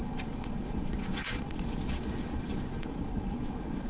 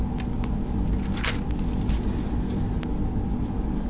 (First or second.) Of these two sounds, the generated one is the first